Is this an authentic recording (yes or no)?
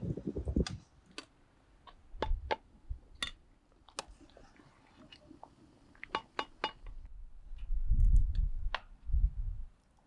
yes